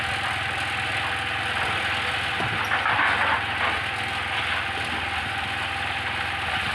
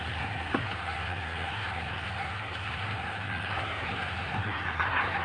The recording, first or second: first